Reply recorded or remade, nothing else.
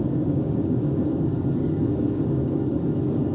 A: remade